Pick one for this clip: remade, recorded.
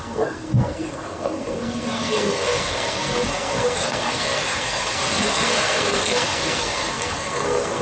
remade